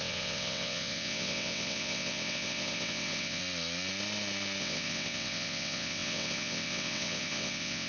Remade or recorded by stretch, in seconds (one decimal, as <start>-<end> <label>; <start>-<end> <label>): 0.0-3.4 remade; 3.4-4.6 recorded; 4.6-7.9 remade